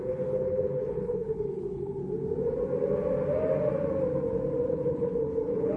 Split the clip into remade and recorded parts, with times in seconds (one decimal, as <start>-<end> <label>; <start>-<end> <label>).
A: 0.0-2.0 remade; 2.0-4.7 recorded; 4.7-5.8 remade